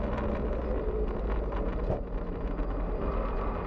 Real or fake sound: real